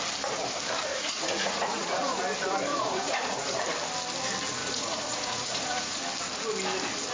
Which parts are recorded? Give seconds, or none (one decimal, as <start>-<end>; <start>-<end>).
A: 0.0-0.9; 2.2-2.7; 3.6-4.6; 6.0-7.1